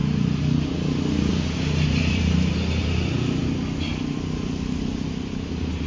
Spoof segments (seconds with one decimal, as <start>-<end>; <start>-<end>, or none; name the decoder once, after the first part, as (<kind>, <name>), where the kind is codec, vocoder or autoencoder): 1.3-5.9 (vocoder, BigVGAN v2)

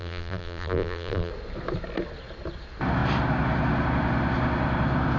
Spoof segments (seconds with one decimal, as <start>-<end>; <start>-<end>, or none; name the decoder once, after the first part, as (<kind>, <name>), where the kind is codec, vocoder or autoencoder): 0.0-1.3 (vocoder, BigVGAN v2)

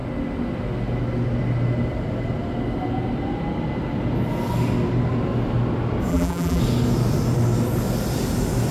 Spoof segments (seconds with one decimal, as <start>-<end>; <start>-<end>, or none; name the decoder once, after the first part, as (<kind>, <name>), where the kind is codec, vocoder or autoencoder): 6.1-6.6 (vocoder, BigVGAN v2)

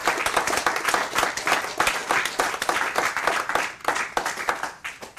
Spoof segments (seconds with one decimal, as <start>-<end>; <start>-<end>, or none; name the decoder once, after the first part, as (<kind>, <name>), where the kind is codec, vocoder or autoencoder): none